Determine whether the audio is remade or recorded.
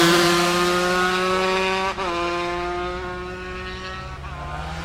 recorded